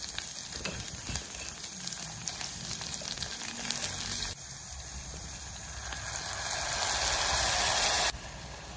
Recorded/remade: recorded